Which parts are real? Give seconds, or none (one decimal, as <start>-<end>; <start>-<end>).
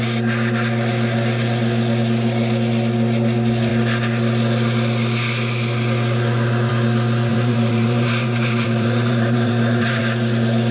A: 0.0-7.3; 10.0-10.7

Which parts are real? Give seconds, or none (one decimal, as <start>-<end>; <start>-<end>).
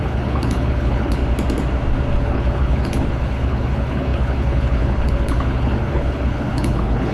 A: 1.2-2.2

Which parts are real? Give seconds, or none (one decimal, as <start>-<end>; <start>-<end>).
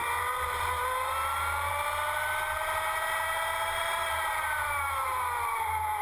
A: 0.0-6.0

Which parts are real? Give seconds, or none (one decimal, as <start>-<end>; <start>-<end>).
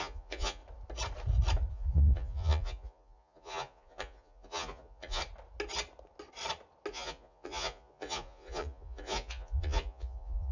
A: 0.6-1.7; 5.2-6.9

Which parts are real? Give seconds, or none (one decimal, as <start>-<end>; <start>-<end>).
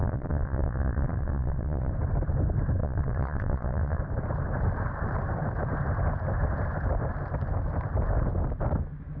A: 1.9-2.8; 4.0-9.2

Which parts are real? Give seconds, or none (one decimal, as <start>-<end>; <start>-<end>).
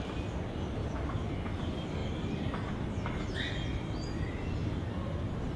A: 0.0-5.6